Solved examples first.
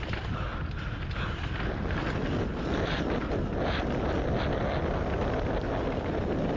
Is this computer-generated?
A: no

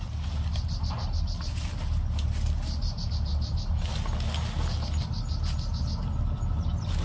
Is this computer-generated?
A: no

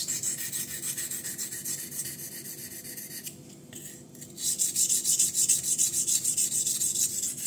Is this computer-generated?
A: no